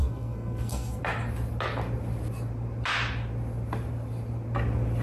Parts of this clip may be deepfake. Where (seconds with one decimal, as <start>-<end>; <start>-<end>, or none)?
0.0-1.0